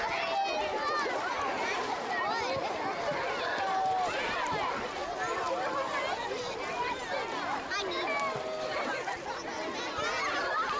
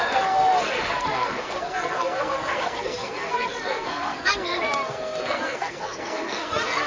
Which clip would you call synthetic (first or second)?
second